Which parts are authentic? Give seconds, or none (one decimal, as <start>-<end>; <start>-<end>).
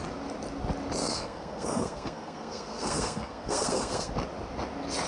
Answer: 0.0-1.0; 4.1-5.1